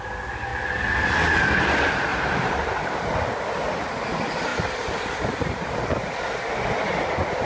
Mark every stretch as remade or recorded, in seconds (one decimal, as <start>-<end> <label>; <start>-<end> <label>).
0.0-2.1 recorded; 2.1-3.0 remade; 3.0-4.5 recorded; 4.5-5.8 remade; 5.8-7.5 recorded